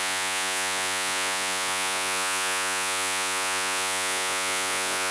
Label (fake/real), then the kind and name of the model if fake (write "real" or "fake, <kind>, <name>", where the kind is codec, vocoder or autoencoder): fake, vocoder, Vocos